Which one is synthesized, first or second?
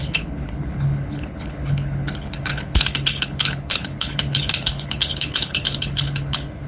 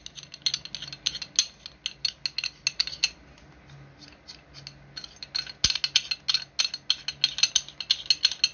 first